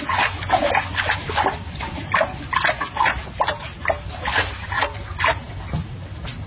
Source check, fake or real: real